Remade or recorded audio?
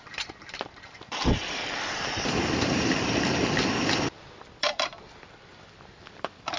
remade